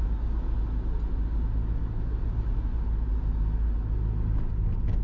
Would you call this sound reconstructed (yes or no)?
no